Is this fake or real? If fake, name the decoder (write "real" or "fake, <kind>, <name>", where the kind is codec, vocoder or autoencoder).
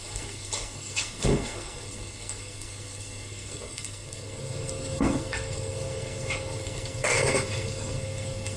fake, codec, SNAC